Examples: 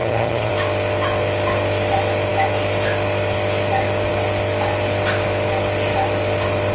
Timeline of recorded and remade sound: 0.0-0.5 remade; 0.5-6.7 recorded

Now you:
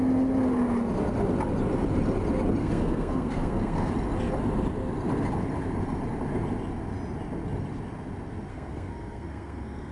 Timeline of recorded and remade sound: 0.0-2.6 recorded; 2.6-3.9 remade; 3.9-8.5 recorded; 8.5-9.9 remade

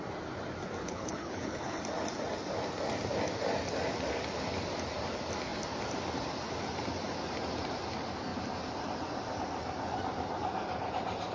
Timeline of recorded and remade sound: 0.0-0.8 recorded; 0.8-1.8 remade; 1.8-11.3 recorded

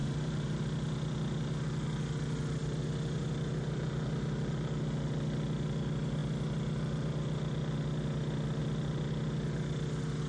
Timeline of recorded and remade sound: 0.0-0.6 remade; 0.6-10.3 recorded

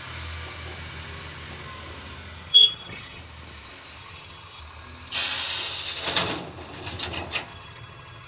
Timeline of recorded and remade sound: 0.0-2.5 recorded; 2.5-3.2 remade; 3.2-4.0 recorded; 4.0-4.6 remade; 4.6-7.5 recorded; 7.5-8.3 remade

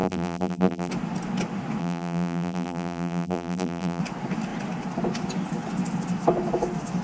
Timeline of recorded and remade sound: 0.0-0.9 remade; 0.9-1.8 recorded; 1.8-4.0 remade; 4.0-7.0 recorded

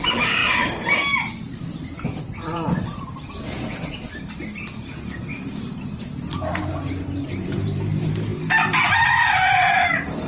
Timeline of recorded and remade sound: 0.0-10.3 remade